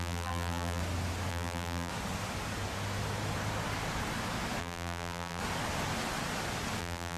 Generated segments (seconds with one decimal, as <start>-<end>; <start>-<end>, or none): 0.0-0.8; 1.3-1.9; 4.6-5.4; 6.8-7.2